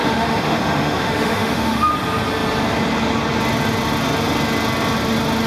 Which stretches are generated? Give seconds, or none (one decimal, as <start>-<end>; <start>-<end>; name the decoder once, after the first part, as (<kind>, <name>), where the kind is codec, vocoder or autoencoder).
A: 0.0-1.9 (autoencoder, DAC-VAE)